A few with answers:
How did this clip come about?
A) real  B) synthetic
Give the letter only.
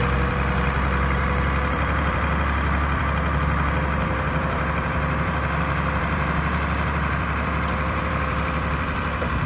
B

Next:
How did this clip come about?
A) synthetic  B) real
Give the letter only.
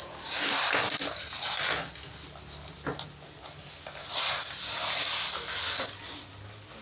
B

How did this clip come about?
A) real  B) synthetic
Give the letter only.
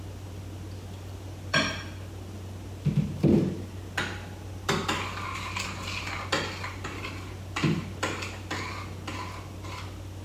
A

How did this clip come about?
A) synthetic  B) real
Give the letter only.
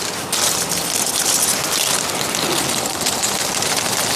B